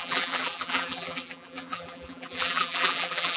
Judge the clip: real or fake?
fake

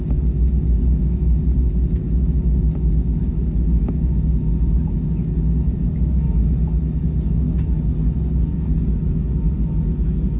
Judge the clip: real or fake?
real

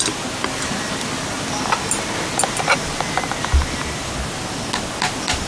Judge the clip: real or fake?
real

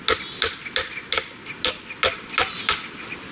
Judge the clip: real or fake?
real